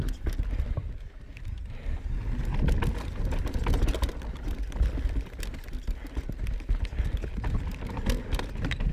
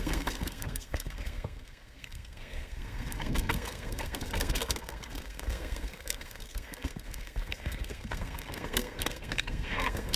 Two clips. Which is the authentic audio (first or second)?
first